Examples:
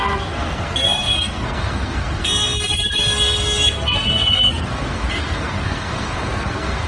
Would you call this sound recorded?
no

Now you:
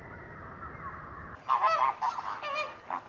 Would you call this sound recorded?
yes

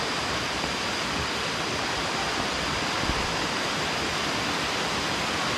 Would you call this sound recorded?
yes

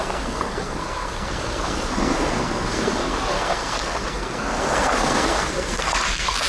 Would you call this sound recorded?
no